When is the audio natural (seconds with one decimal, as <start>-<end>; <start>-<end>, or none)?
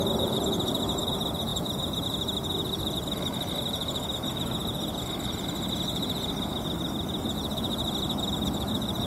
0.0-9.1